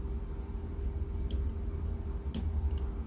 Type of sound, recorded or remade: recorded